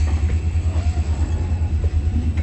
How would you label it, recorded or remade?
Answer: recorded